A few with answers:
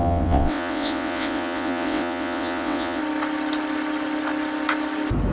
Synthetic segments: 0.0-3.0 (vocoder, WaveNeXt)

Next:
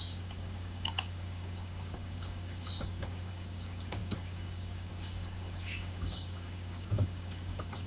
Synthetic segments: 0.0-7.9 (codec, DAC)